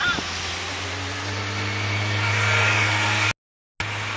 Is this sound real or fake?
real